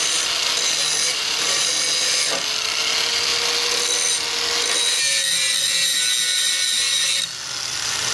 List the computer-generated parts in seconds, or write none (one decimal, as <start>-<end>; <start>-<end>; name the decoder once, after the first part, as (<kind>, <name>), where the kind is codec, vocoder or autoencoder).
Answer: 1.1-1.7 (vocoder, BigVGAN v2); 6.3-7.1